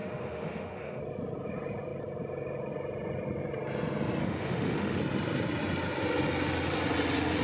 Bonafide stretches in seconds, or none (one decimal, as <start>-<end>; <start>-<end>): 1.0-4.2; 5.0-7.4